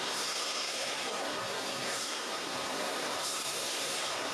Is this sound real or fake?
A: fake